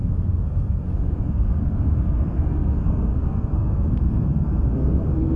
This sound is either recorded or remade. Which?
remade